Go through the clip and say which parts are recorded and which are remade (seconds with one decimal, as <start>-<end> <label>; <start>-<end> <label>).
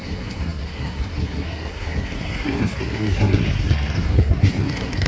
0.0-5.1 remade